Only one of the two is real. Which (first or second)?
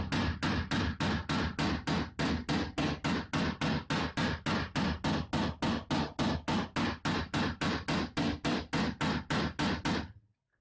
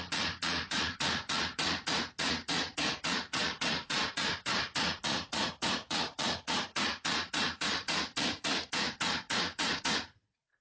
first